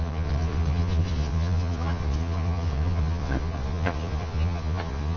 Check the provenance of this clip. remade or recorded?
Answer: remade